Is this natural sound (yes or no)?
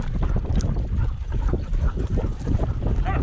yes